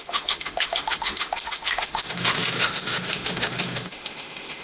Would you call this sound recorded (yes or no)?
no